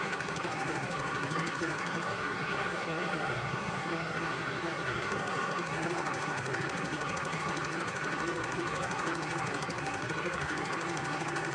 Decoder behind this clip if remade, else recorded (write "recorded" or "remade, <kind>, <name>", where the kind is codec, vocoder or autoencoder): remade, codec, SNAC